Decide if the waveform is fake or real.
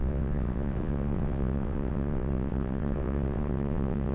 fake